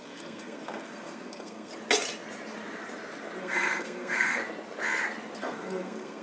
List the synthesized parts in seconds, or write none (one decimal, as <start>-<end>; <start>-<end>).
0.0-1.7; 3.4-4.4; 5.4-6.2